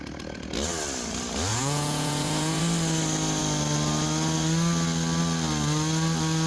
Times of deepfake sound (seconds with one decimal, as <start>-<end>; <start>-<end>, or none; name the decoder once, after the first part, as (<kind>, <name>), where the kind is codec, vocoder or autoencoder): 1.5-2.6 (vocoder, Vocos)